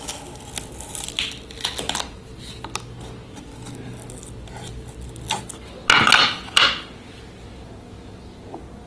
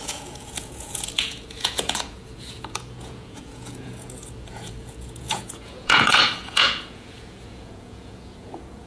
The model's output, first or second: second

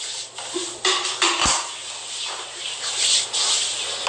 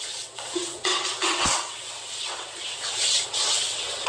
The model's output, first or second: second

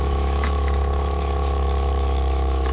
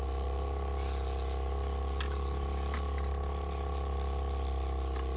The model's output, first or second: first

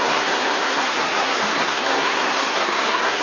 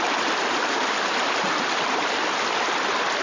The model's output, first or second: first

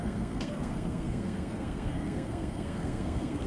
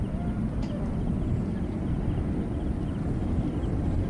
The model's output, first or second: first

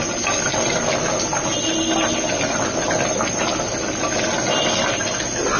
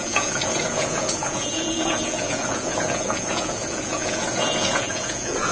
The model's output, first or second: second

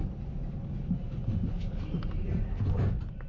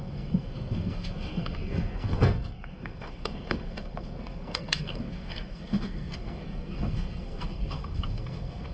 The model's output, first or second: second